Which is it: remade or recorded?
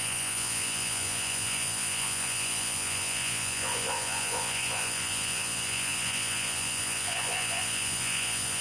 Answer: remade